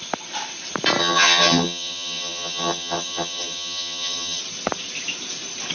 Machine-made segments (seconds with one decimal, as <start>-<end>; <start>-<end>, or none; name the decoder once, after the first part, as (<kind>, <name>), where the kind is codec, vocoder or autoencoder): 1.0-4.4 (vocoder, HiFi-GAN)

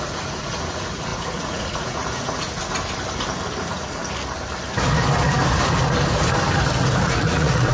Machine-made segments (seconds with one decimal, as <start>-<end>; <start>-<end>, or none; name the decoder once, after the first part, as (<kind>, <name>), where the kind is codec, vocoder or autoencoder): 0.0-2.6 (vocoder, Vocos); 3.6-4.0; 7.0-7.7

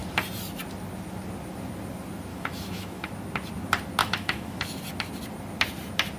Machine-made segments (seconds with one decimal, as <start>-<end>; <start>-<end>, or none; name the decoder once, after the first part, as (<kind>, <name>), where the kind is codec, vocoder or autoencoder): 2.3-3.1 (autoencoder, DAC-VAE); 4.0-4.6

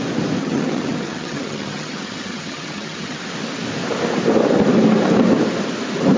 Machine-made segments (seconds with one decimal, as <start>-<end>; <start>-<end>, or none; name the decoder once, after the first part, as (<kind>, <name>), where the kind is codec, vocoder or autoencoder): 0.4-3.2 (vocoder, HiFi-GAN)